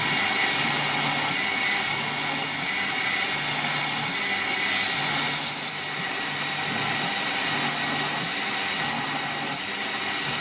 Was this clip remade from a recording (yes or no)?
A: no